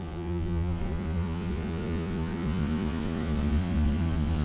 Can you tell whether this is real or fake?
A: fake